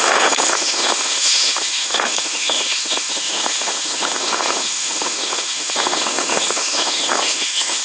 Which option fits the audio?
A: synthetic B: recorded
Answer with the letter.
A